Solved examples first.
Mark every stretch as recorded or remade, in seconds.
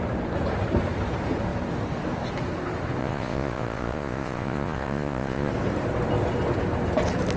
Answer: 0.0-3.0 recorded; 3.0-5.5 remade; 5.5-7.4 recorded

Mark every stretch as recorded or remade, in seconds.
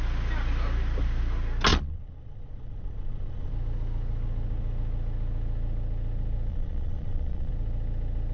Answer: 0.0-1.7 recorded; 1.7-3.5 remade; 3.5-6.5 recorded; 6.5-7.5 remade; 7.5-8.3 recorded